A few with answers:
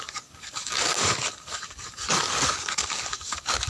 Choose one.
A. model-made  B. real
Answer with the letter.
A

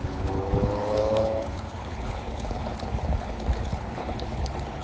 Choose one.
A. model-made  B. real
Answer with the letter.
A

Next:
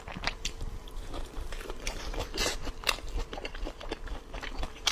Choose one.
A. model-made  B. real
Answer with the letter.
A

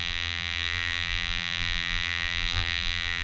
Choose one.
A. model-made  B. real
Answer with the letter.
A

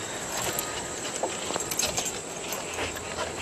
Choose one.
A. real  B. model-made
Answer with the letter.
A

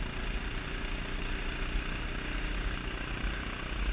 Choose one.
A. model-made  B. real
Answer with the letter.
B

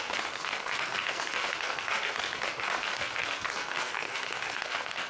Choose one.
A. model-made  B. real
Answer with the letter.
A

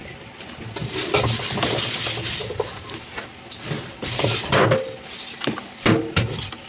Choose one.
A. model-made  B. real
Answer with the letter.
B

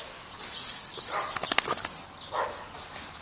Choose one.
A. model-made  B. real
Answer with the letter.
B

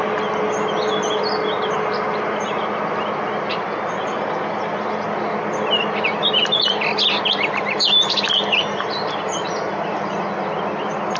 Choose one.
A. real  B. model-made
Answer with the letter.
A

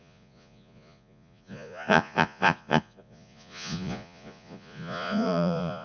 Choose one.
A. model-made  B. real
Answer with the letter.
A